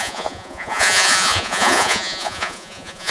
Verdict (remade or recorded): remade